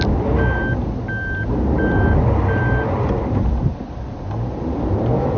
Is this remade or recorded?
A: recorded